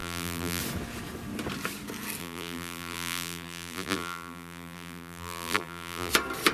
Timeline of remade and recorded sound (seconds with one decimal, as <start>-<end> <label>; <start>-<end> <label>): 0.0-0.6 remade; 0.6-2.2 recorded; 2.2-6.1 remade; 6.1-6.5 recorded